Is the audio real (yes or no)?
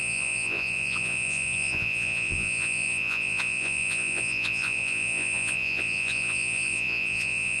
no